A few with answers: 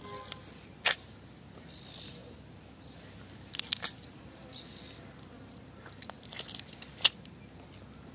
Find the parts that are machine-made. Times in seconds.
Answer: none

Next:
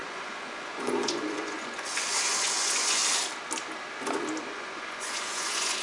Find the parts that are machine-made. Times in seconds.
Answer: 0.0-3.0 (vocoder, Vocos); 4.4-5.8

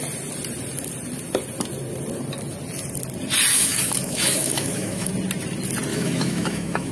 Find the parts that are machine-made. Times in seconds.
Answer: 3.5-5.1 (autoencoder, DAC-VAE); 5.9-6.9

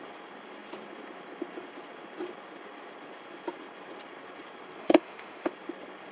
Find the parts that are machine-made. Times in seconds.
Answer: 4.8-5.5 (autoencoder, DAC-VAE)

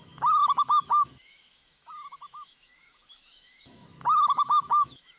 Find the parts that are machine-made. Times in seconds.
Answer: 0.0-5.2 (autoencoder, DAC-VAE)